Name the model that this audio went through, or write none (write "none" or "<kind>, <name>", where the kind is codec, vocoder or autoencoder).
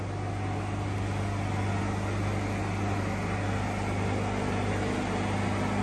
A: none